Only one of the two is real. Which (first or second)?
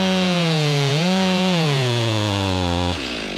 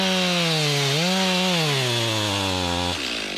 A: second